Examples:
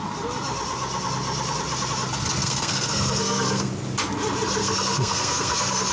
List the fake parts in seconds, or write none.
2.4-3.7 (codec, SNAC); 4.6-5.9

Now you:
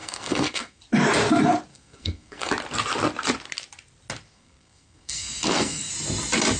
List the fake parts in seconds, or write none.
0.0-0.8 (codec, SNAC); 1.7-2.5; 4.3-5.9

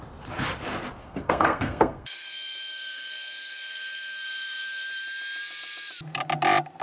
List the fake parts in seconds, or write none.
1.0-4.9 (codec, SNAC)

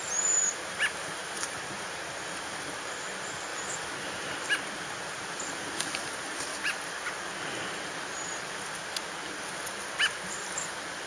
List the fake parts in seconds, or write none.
none

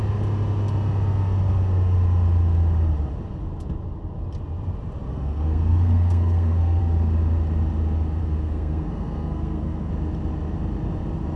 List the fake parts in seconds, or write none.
5.1-6.8 (codec, SNAC); 8.2-9.9

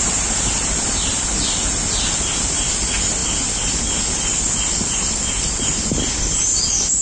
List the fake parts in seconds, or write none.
none

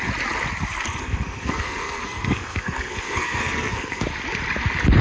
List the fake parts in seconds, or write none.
1.0-4.0 (codec, SNAC)

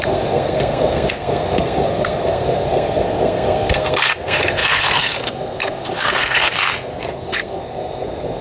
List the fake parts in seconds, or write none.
0.0-8.4 (codec, SNAC)